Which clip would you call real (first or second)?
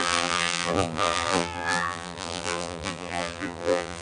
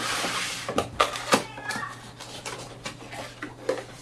second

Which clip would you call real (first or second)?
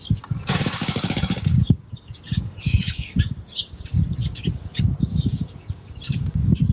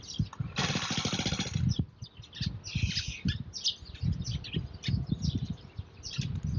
second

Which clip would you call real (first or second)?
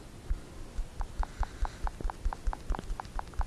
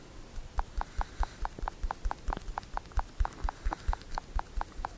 first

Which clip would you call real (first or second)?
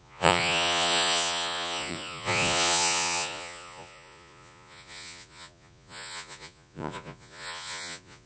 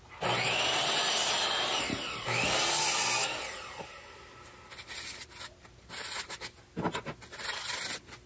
second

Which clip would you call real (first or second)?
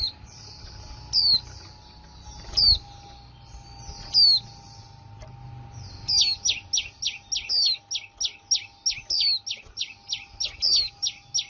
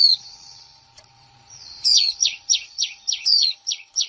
first